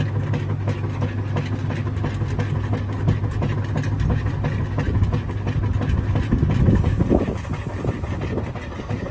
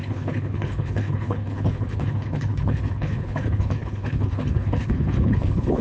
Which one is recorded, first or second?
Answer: first